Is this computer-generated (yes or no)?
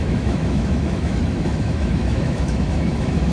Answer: yes